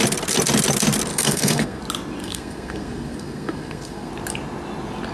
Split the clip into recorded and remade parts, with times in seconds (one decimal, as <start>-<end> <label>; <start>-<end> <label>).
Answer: 0.0-1.1 recorded; 1.1-1.8 remade; 1.8-2.2 recorded; 2.2-4.1 remade; 4.1-5.1 recorded